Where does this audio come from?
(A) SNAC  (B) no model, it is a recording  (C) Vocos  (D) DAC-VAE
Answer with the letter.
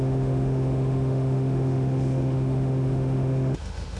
D